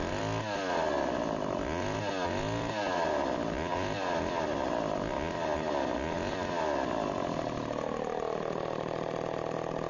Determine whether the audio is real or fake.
real